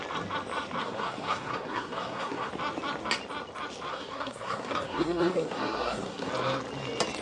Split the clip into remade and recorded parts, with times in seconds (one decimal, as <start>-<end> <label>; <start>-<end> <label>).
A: 0.0-0.8 recorded; 0.8-2.5 remade; 2.5-3.9 recorded; 3.9-6.3 remade; 6.3-7.2 recorded

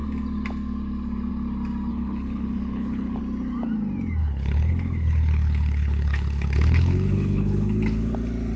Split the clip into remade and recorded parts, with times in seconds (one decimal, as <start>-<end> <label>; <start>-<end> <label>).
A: 0.0-1.9 recorded; 1.9-3.2 remade; 3.2-4.2 recorded; 4.2-8.1 remade; 8.1-8.6 recorded

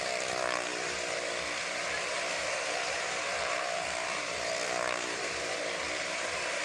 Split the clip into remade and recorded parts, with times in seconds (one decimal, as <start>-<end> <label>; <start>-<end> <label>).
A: 0.0-2.4 recorded; 2.4-6.6 remade

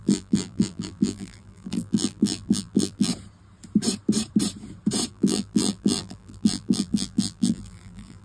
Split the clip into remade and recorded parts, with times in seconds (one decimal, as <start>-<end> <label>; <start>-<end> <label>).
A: 0.0-3.1 remade; 3.1-5.1 recorded; 5.1-8.2 remade

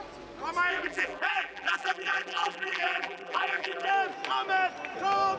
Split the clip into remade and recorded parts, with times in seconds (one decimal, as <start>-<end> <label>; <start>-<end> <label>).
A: 0.0-0.7 recorded; 0.7-3.9 remade; 3.9-5.4 recorded